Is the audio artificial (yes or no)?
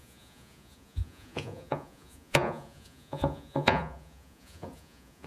yes